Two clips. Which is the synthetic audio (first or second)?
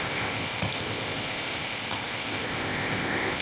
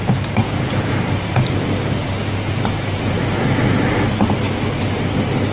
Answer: first